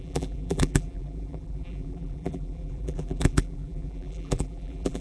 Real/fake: fake